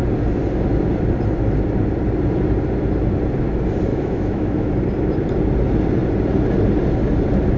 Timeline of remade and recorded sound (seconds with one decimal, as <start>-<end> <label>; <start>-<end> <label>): 0.0-3.9 recorded; 3.9-4.7 remade; 4.7-7.6 recorded